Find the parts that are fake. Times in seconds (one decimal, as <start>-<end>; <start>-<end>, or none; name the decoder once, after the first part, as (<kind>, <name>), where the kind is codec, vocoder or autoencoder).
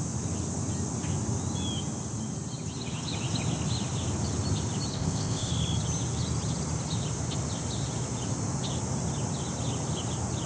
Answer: 4.9-5.5 (codec, ZipCodec)